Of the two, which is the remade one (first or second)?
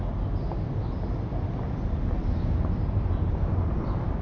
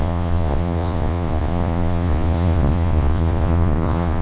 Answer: second